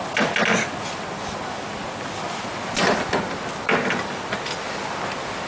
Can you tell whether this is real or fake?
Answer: real